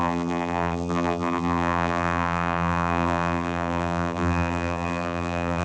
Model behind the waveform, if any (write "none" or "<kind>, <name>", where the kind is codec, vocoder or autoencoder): vocoder, BigVGAN v2